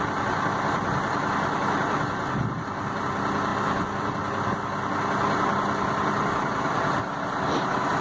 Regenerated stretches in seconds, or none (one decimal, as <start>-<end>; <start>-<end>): none